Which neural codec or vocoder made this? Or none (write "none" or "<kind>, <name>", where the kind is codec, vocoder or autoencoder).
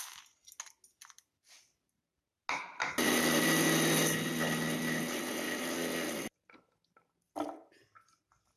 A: none